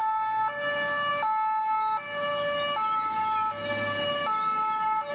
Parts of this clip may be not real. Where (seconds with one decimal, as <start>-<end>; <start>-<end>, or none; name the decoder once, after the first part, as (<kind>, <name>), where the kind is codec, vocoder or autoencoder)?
none